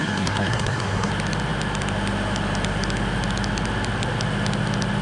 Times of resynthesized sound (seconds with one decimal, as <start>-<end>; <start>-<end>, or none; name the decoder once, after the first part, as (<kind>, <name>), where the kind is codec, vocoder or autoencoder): 0.0-1.1 (codec, SNAC)